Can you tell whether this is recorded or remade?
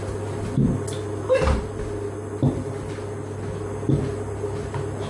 recorded